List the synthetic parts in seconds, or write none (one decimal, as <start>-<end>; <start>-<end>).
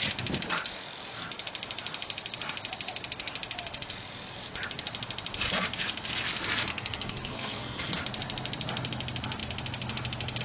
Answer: 6.7-8.0